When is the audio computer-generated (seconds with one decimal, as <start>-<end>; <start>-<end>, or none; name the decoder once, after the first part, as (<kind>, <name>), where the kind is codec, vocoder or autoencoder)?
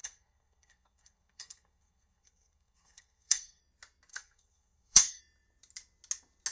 0.0-3.6 (codec, SNAC); 4.1-5.2